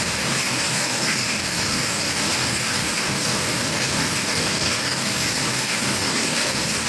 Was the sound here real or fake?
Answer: fake